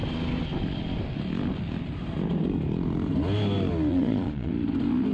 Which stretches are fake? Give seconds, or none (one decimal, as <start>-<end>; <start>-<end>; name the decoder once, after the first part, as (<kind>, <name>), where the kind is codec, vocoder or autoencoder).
3.9-4.5 (vocoder, Vocos)

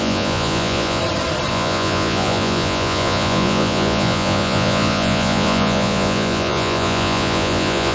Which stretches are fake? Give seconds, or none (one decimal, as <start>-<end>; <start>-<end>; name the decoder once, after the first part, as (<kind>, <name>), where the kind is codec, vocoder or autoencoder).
0.0-1.0 (vocoder, Vocos); 1.5-7.9

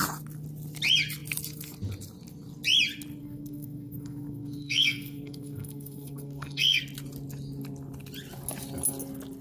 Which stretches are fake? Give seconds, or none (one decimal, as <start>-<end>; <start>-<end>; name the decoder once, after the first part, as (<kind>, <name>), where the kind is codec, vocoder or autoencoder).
3.2-6.8 (codec, SNAC)

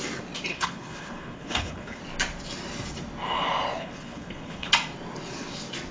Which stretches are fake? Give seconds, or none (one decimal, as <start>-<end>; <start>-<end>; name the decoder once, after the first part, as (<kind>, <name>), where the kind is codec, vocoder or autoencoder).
0.5-2.0 (codec, HILCodec); 3.8-4.7